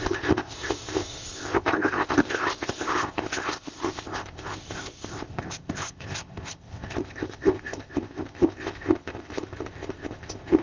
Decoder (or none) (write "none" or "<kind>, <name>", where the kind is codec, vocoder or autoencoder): codec, ZipCodec